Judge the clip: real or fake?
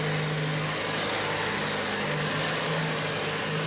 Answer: real